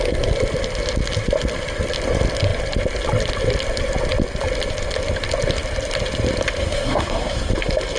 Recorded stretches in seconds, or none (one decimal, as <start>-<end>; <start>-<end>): 0.0-6.6; 7.5-8.0